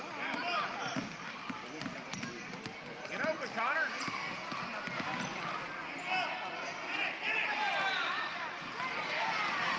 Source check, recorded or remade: recorded